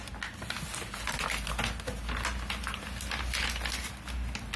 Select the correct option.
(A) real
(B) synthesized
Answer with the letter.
A